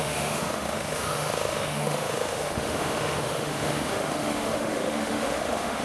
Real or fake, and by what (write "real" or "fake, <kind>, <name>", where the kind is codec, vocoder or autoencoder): fake, autoencoder, DAC-VAE